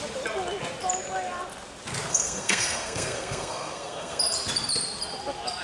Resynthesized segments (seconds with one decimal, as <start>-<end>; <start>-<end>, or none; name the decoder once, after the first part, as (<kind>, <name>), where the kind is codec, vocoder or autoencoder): 2.1-4.2 (codec, SNAC)